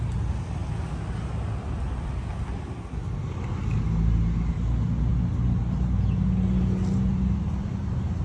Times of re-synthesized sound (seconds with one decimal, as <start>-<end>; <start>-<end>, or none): 7.1-8.2